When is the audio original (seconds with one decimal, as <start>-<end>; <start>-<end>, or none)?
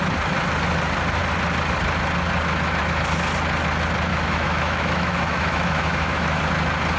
0.0-4.1; 6.4-7.0